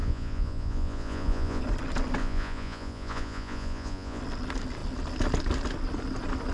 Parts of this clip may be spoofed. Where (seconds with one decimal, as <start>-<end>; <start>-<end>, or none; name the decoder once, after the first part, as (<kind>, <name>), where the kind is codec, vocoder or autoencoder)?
0.0-1.6 (vocoder, Vocos); 2.2-4.2